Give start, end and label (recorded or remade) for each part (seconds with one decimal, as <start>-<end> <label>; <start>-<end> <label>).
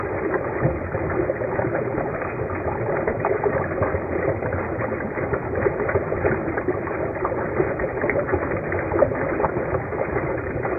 0.0-3.1 recorded; 3.1-3.6 remade; 3.6-5.4 recorded; 5.4-7.9 remade; 7.9-10.8 recorded